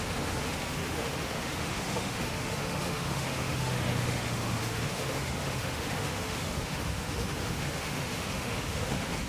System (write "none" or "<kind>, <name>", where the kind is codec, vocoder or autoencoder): autoencoder, DAC-VAE